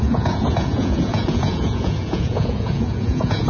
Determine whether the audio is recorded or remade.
remade